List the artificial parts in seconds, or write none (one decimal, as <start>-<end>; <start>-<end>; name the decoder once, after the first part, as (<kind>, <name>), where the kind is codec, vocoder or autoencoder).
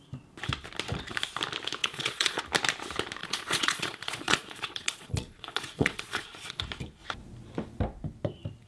1.8-2.4 (vocoder, Vocos); 3.2-6.6